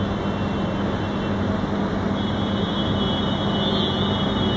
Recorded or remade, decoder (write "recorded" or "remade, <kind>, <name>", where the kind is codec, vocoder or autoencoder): recorded